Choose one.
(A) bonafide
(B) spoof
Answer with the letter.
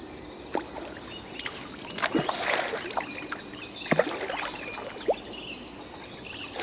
A